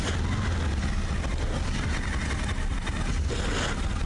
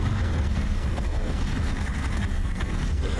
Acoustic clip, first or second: first